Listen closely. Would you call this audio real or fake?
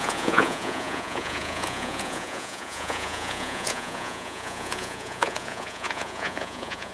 fake